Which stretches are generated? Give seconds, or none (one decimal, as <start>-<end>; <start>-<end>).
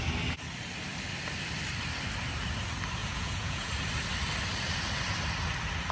3.0-3.7